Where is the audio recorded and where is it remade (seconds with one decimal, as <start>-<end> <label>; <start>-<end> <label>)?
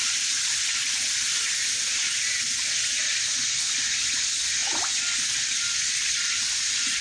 0.0-7.0 recorded